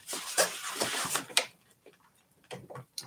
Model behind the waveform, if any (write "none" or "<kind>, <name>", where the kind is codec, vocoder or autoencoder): vocoder, BigVGAN v2